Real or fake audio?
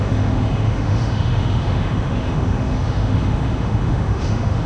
fake